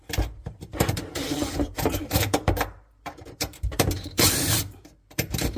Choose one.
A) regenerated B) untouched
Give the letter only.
A